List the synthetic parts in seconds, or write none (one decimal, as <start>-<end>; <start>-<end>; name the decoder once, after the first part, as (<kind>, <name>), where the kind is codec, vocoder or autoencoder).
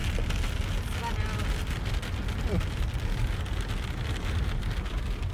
none